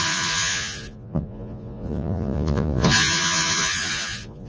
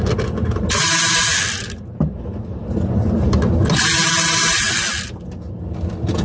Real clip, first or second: second